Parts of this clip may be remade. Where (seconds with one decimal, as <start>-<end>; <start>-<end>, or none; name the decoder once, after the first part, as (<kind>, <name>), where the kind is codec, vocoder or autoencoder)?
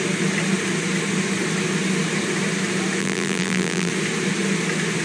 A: 3.0-3.9 (vocoder, BigVGAN v2)